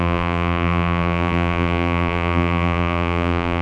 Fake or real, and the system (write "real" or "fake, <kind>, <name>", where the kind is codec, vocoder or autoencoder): fake, vocoder, BigVGAN v2